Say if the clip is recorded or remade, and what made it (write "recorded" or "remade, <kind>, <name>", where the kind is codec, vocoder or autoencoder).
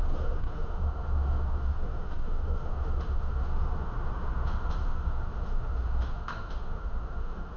remade, autoencoder, DAC-VAE